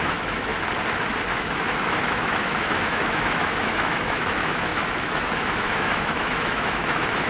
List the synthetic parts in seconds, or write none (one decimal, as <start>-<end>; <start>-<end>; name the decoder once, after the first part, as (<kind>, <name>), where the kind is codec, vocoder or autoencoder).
0.0-0.5 (autoencoder, DAC-VAE); 1.4-7.3